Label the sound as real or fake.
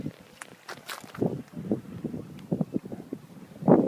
real